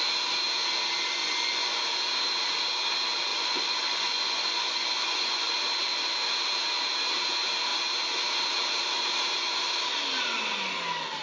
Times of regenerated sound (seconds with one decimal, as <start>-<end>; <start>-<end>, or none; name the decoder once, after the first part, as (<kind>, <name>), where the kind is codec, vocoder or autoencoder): 1.2-1.8 (vocoder, Vocos); 3.3-5.5